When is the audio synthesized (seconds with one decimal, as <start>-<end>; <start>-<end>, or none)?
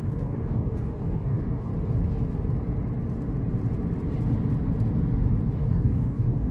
0.0-1.7; 5.6-6.5